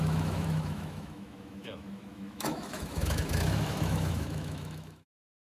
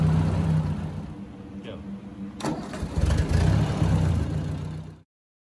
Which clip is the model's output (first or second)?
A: first